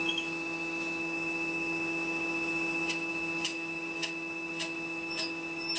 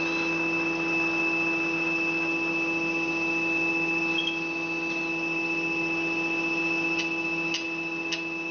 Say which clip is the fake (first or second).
first